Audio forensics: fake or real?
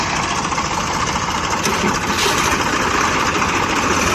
real